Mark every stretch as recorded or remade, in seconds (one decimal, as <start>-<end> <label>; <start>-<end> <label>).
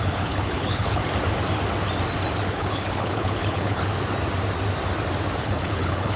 0.0-1.0 remade; 1.0-2.5 recorded; 2.5-3.9 remade; 3.9-5.4 recorded; 5.4-6.2 remade